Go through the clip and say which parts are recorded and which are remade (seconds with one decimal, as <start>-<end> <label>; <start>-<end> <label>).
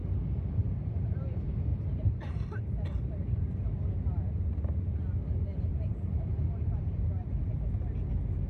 0.0-1.7 recorded; 1.7-2.3 remade; 2.3-5.7 recorded; 5.7-6.5 remade; 6.5-8.5 recorded